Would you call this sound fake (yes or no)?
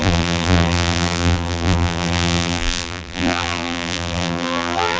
yes